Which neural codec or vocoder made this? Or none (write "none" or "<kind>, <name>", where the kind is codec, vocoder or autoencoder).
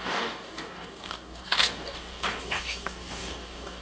codec, DAC